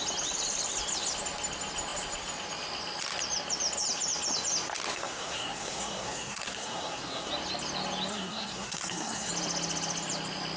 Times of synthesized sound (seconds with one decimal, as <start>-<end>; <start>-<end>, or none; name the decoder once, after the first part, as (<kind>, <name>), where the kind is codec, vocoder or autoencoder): 4.9-7.3 (codec, SNAC); 8.1-9.3